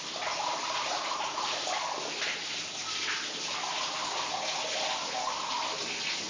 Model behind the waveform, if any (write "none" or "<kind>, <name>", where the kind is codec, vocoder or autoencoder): none